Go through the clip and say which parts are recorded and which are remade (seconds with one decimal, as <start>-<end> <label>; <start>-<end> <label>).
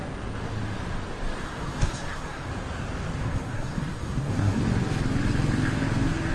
0.0-1.4 recorded; 1.4-2.5 remade; 2.5-3.2 recorded; 3.2-4.6 remade; 4.6-6.3 recorded